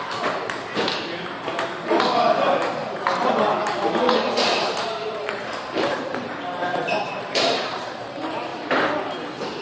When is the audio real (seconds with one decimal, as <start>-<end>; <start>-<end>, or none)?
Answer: 0.0-2.8; 3.3-4.5; 8.0-9.6